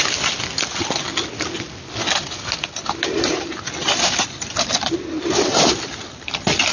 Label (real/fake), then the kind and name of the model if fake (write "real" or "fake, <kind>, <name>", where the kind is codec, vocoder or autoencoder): real